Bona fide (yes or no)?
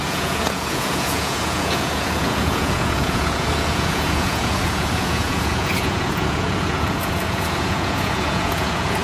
no